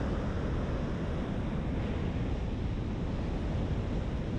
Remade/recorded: recorded